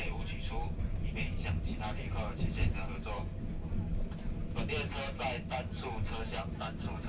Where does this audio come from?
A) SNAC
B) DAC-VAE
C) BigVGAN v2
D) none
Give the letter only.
C